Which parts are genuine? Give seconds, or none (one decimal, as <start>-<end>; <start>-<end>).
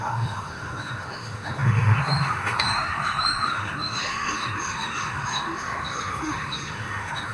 none